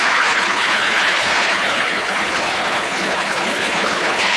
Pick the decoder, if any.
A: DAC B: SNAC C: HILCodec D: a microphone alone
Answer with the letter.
C